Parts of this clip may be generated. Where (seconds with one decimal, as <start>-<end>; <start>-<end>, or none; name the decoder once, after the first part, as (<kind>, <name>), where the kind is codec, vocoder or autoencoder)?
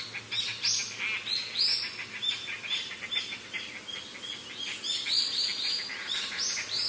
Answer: 1.7-3.6 (vocoder, BigVGAN v2); 5.3-6.9